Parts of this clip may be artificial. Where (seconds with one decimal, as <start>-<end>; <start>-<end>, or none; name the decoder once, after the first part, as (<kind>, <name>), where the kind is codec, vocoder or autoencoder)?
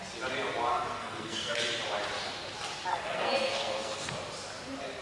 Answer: 0.7-1.6 (codec, SNAC); 2.9-4.1